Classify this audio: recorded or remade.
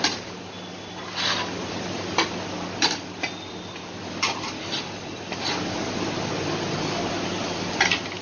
recorded